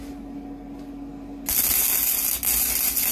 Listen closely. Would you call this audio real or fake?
real